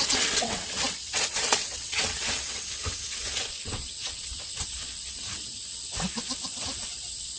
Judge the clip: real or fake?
fake